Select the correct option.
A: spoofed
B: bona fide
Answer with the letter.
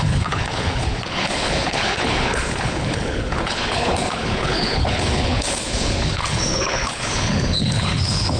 A